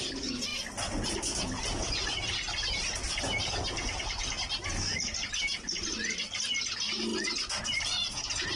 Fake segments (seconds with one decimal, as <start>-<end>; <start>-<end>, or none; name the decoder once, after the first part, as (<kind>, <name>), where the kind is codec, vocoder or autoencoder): none